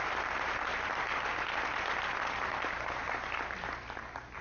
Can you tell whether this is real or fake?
real